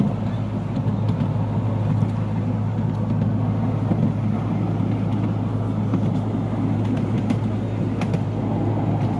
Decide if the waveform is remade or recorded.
recorded